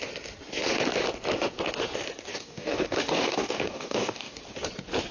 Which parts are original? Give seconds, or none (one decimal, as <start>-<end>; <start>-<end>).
0.0-2.3; 4.4-5.1